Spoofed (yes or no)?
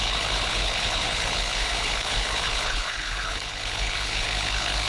yes